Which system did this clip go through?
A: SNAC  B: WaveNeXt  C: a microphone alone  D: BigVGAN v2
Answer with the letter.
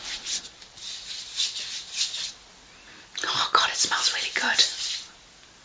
C